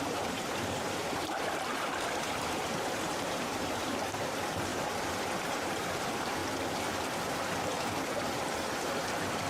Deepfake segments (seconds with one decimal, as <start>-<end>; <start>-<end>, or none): 0.0-6.4; 8.0-9.5